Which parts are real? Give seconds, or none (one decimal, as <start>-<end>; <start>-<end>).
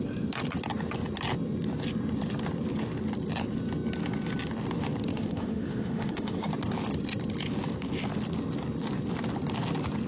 0.0-5.1; 6.5-10.1